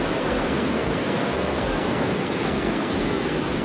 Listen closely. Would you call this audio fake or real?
fake